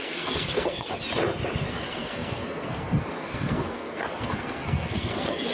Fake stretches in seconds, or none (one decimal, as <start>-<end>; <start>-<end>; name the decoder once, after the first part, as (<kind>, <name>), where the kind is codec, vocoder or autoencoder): 0.0-0.9 (codec, SNAC); 1.7-5.5